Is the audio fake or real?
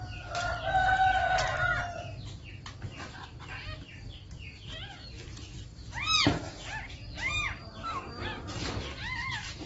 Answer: real